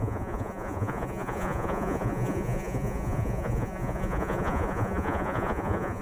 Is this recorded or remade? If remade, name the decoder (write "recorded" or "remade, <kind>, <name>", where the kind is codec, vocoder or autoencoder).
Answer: remade, vocoder, Vocos